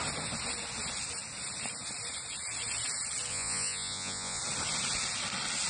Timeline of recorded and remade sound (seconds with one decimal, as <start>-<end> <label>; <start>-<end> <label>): 0.0-3.3 recorded; 3.3-4.4 remade; 4.4-5.7 recorded